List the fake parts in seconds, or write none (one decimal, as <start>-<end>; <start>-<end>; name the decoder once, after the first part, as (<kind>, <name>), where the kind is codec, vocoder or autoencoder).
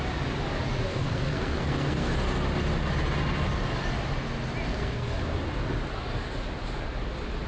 0.9-2.1 (codec, SNAC); 4.7-5.2